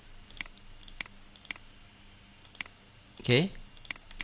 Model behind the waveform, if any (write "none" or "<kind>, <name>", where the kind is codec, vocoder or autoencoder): none